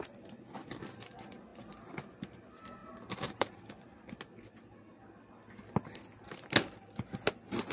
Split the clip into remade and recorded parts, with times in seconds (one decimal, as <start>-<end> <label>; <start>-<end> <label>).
0.0-2.8 recorded; 2.8-3.6 remade; 3.6-7.7 recorded